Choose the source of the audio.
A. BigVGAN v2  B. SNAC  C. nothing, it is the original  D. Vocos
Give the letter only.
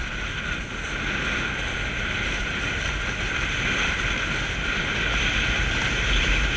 C